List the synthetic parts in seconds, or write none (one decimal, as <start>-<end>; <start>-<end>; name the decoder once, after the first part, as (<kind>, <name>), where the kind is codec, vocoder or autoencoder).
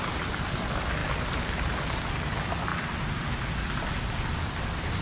none